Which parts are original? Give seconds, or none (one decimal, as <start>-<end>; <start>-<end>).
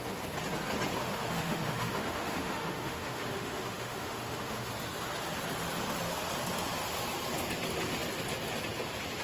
0.0-1.0; 4.7-9.2